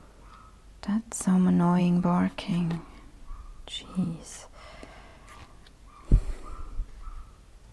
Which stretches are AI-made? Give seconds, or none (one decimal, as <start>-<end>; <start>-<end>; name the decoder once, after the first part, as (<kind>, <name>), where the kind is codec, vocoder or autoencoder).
none